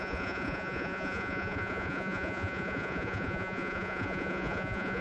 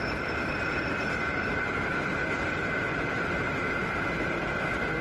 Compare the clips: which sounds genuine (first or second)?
second